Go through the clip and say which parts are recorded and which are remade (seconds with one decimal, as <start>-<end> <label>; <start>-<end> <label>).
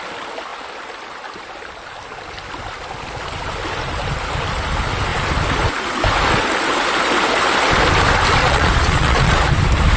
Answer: 0.0-8.4 recorded; 8.4-9.4 remade; 9.4-10.0 recorded